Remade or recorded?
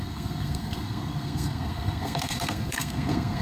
remade